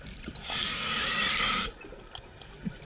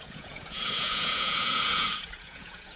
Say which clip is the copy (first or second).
second